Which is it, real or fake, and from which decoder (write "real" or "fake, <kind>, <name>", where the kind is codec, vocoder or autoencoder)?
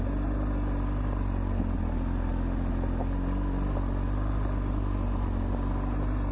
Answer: real